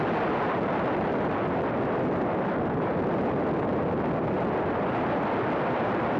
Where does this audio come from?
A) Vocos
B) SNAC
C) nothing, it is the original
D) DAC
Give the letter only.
C